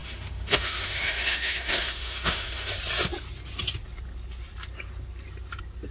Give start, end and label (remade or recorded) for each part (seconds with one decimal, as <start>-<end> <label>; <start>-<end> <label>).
0.0-2.7 remade; 2.7-5.9 recorded